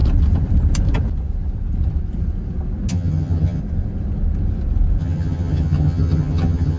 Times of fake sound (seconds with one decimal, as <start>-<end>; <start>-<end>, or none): 2.9-3.6; 5.0-6.8